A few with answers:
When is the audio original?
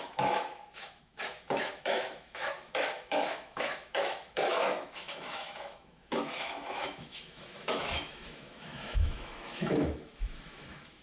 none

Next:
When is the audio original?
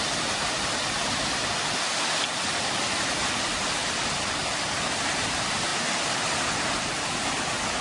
0.0-7.8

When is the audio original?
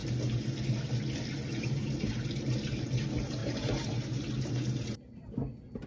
0.0-0.9; 3.4-5.9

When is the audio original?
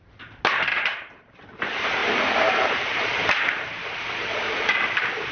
0.0-0.7; 1.3-2.0; 4.6-5.3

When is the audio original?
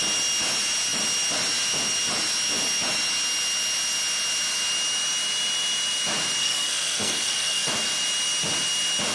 0.0-6.4; 7.7-9.1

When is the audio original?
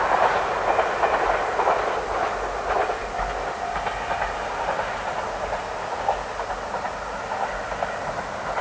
0.0-8.6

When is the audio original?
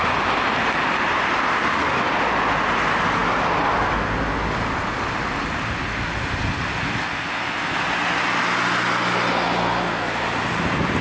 0.0-11.0